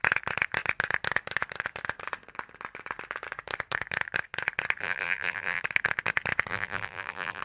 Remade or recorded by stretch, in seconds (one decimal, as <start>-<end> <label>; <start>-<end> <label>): 0.0-4.8 recorded; 4.8-5.6 remade; 5.6-6.5 recorded; 6.5-7.4 remade